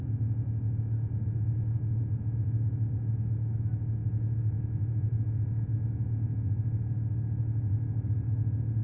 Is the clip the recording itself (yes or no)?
yes